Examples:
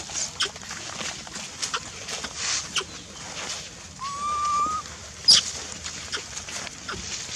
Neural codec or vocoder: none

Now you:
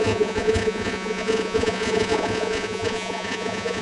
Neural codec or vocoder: vocoder, Vocos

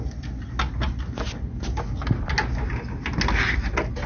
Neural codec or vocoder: none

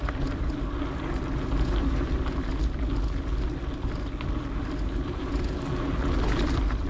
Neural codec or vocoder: none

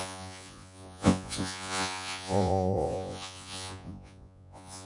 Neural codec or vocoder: vocoder, Vocos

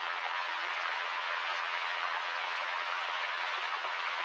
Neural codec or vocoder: vocoder, Vocos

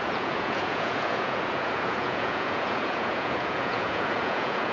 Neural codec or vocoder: vocoder, Vocos